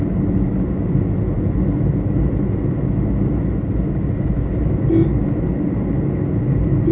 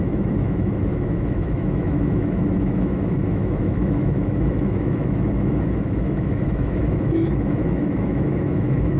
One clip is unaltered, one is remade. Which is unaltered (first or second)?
first